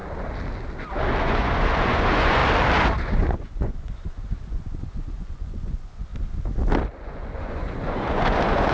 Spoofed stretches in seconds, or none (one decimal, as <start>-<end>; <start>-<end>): 1.2-2.4; 3.1-6.1; 7.0-8.7